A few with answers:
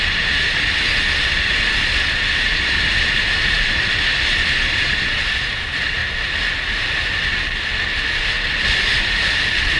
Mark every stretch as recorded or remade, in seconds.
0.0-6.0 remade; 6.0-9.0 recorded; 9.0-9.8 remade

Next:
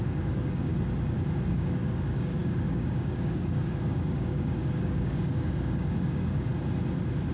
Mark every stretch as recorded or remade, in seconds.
0.0-0.7 remade; 0.7-1.5 recorded; 1.5-6.5 remade; 6.5-7.3 recorded

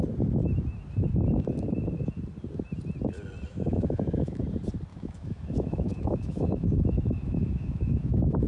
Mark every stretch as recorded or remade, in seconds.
0.0-3.5 recorded; 3.5-4.4 remade; 4.4-4.9 recorded; 4.9-8.5 remade

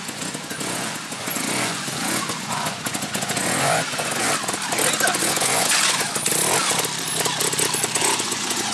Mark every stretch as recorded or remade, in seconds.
0.0-4.3 remade; 4.3-5.2 recorded; 5.2-6.2 remade; 6.2-7.9 recorded; 7.9-8.7 remade

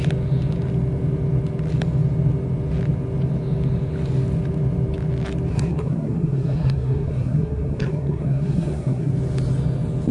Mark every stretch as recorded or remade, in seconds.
0.0-5.5 recorded; 5.5-9.1 remade; 9.1-10.1 recorded

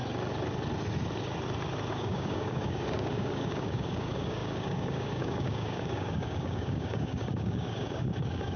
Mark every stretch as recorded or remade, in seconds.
0.0-1.9 recorded; 1.9-8.6 remade